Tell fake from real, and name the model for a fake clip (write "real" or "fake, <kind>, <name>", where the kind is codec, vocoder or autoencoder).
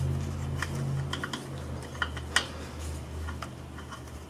real